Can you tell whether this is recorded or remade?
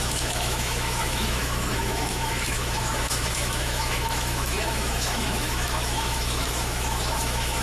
remade